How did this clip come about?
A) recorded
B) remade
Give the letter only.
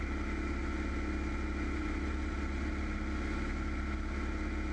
A